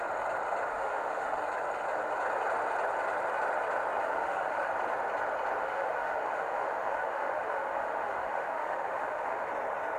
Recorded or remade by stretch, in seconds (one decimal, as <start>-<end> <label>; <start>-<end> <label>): 0.0-0.7 recorded; 0.7-1.4 remade; 1.4-4.0 recorded; 4.0-4.7 remade; 4.7-5.6 recorded; 5.6-9.5 remade; 9.5-10.0 recorded